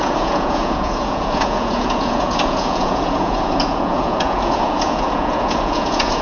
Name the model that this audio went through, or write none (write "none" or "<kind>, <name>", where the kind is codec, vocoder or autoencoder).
vocoder, Vocos